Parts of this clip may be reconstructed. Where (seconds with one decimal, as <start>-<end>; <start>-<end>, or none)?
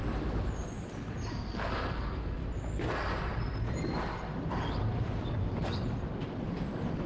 1.3-2.4